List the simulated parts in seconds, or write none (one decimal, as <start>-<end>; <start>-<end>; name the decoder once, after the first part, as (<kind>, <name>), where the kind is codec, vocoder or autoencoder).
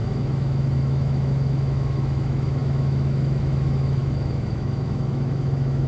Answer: 0.0-5.9 (autoencoder, DAC-VAE)